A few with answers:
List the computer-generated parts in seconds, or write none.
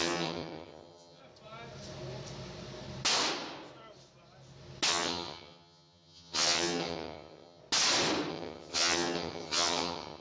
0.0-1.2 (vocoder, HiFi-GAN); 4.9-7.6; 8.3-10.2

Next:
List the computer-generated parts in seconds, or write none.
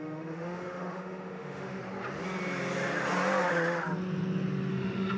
0.0-1.8 (autoencoder, DAC-VAE); 4.7-5.2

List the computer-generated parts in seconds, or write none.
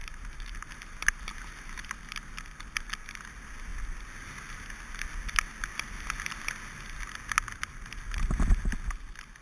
0.0-1.8 (vocoder, BigVGAN v2)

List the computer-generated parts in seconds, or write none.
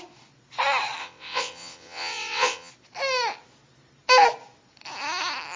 1.0-2.7 (vocoder, WaveNeXt)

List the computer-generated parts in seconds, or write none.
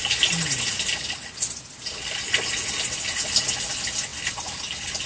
none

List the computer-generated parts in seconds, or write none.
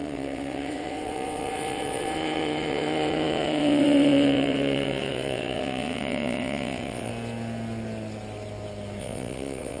0.0-7.1 (vocoder, WaveNeXt); 9.0-9.8